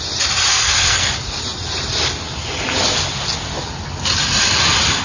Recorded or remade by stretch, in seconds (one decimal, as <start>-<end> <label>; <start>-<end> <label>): 0.0-0.5 recorded; 0.5-1.1 remade; 1.1-5.0 recorded